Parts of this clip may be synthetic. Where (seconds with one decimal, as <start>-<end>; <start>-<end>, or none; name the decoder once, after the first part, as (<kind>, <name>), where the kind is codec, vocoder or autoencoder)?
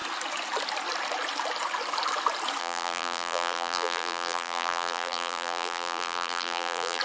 2.6-7.0 (vocoder, BigVGAN v2)